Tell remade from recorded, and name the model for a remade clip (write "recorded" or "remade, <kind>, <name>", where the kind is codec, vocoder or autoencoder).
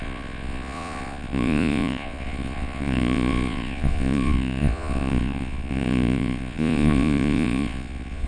remade, vocoder, Vocos